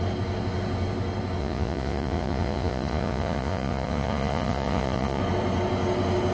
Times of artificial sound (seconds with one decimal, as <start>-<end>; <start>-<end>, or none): 1.4-5.2